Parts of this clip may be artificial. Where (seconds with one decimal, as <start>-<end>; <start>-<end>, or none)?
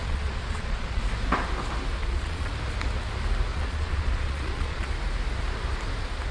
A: 0.0-1.0; 2.0-2.5; 3.5-4.9